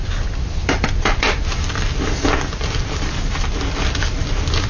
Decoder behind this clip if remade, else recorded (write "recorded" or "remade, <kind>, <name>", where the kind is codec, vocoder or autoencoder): recorded